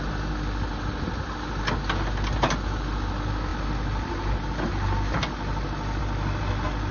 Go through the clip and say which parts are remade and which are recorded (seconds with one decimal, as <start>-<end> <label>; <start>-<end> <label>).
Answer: 0.0-6.9 recorded